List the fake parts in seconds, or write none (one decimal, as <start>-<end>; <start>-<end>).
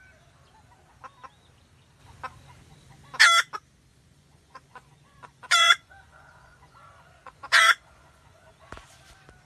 3.9-8.7